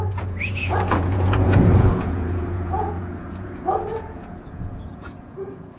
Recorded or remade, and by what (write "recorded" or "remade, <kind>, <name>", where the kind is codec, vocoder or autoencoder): remade, vocoder, Vocos